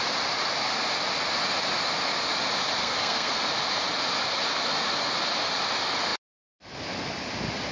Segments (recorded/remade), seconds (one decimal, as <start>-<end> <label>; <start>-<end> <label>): 0.0-2.8 recorded; 2.8-3.3 remade; 3.3-7.7 recorded